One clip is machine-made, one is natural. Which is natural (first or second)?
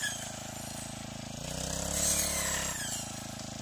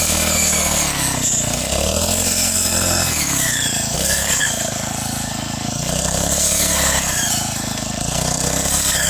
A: first